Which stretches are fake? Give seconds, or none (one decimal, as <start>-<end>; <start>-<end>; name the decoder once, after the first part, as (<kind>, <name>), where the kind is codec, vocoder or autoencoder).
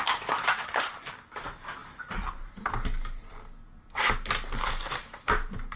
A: none